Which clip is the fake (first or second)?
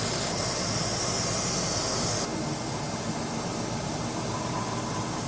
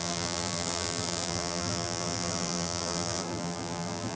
second